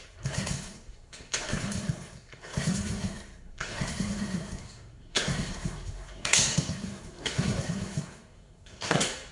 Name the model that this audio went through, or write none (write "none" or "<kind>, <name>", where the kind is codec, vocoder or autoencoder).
codec, SNAC